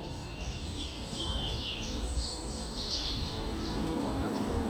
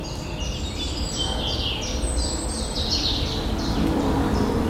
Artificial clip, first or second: first